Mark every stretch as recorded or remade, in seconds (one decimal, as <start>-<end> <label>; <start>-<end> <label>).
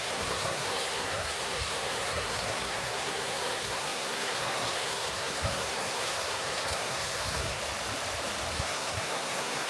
0.0-7.6 remade; 7.6-8.5 recorded; 8.5-9.7 remade